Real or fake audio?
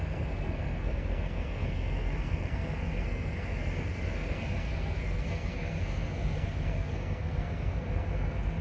fake